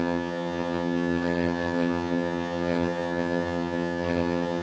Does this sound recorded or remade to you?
remade